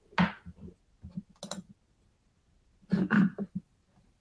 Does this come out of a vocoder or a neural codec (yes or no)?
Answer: no